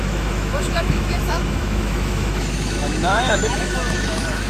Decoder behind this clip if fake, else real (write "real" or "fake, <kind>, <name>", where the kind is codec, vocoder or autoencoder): fake, autoencoder, DAC-VAE